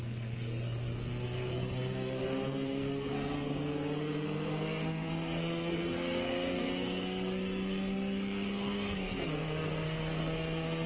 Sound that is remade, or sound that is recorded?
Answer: remade